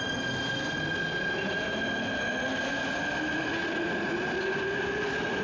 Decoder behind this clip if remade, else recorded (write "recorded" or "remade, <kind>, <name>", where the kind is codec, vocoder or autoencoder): recorded